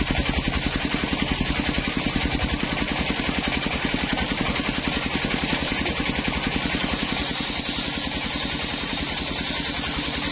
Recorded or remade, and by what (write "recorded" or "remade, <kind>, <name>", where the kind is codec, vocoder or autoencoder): recorded